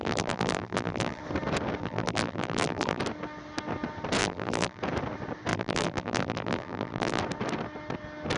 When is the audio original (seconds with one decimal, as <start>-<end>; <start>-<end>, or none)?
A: 1.2-1.8; 3.0-4.2; 4.8-5.5; 7.2-8.4